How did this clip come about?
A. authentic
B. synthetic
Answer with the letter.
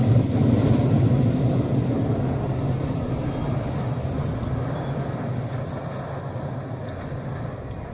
A